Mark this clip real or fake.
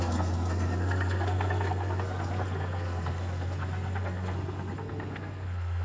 fake